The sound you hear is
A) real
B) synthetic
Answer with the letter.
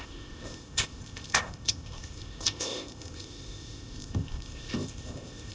B